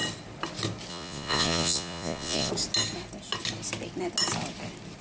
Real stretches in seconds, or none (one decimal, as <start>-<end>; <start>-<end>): 0.0-0.9; 2.5-5.0